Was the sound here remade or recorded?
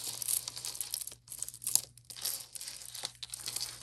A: recorded